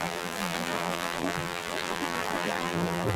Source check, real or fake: fake